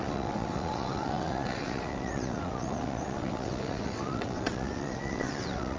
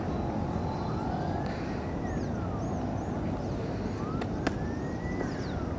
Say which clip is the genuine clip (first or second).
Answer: second